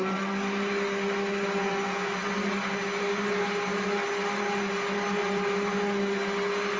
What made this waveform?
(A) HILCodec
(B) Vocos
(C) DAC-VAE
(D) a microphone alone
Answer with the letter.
D